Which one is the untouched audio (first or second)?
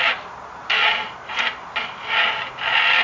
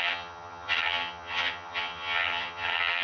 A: first